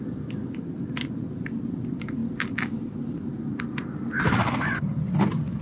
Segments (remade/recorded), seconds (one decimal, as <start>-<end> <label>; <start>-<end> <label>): 0.0-5.6 recorded